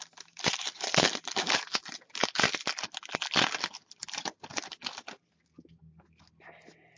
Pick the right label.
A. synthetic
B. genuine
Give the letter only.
B